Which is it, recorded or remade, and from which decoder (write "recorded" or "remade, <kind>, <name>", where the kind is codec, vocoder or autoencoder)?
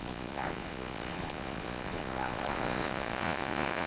remade, vocoder, Vocos